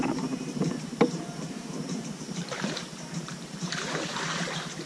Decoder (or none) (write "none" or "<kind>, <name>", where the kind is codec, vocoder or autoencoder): vocoder, BigVGAN v2